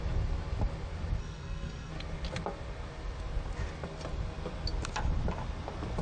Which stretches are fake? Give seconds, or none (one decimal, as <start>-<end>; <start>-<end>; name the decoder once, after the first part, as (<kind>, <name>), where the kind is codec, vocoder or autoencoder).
1.2-1.9 (codec, SNAC)